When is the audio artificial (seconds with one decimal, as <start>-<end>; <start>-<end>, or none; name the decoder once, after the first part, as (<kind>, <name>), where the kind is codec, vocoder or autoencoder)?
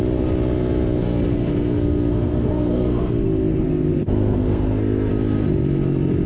1.3-5.1 (codec, SNAC)